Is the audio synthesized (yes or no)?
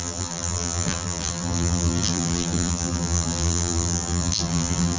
yes